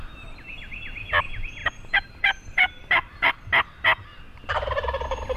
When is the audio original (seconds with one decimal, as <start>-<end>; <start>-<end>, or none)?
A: 0.0-1.6; 3.3-5.4